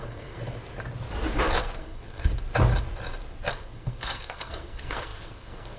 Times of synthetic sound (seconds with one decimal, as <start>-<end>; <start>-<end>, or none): 0.0-0.4; 1.6-2.3; 3.5-5.8